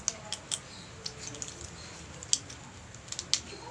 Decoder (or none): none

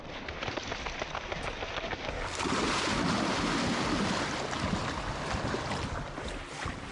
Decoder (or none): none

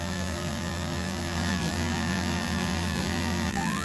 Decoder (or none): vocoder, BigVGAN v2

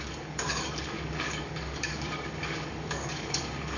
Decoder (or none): codec, DAC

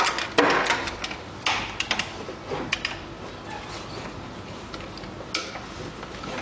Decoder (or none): none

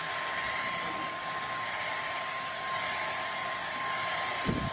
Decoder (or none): none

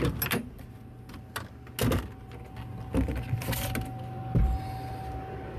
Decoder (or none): none